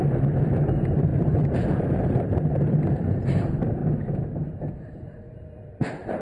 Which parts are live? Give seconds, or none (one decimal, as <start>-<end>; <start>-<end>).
3.8-4.7